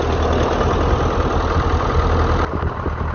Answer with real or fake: real